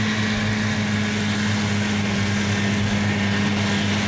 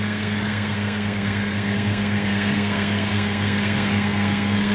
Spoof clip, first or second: second